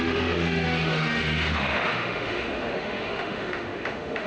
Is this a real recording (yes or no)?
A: no